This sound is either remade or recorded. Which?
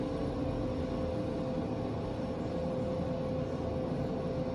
recorded